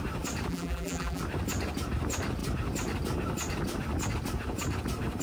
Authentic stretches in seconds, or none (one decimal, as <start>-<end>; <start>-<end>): 0.0-0.5; 1.2-5.2